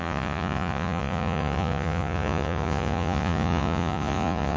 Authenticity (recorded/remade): remade